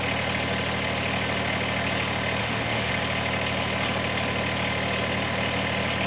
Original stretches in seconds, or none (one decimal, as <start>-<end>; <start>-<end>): 0.0-2.4; 2.9-6.1